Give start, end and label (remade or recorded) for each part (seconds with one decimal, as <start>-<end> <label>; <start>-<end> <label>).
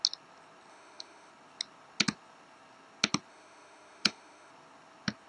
0.0-0.7 recorded; 0.7-1.3 remade; 1.3-3.3 recorded; 3.3-4.5 remade; 4.5-5.3 recorded